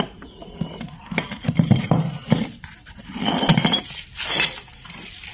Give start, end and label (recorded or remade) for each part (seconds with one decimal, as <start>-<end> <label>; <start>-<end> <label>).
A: 0.0-5.3 recorded

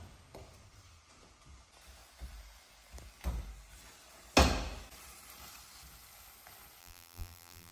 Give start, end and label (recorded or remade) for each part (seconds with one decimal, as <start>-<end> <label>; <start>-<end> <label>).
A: 0.0-6.8 recorded; 6.8-7.7 remade

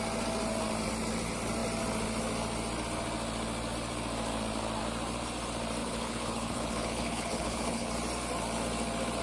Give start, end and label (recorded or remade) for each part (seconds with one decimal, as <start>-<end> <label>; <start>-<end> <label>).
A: 0.0-5.8 recorded; 5.8-7.9 remade; 7.9-9.2 recorded

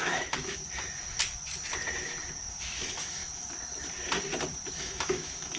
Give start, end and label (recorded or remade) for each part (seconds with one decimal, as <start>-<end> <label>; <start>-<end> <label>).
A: 0.0-0.6 remade; 0.6-2.6 recorded; 2.6-3.2 remade; 3.2-4.7 recorded; 4.7-5.6 remade